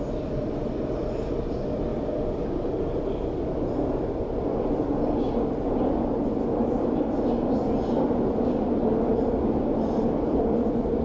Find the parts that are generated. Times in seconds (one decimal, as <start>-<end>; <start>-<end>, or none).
none